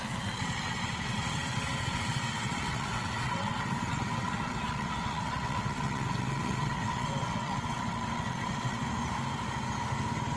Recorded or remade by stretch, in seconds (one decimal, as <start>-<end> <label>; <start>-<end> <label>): 0.0-8.8 remade; 8.8-10.4 recorded